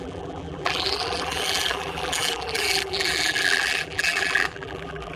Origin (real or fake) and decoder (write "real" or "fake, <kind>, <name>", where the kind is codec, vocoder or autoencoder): fake, vocoder, BigVGAN v2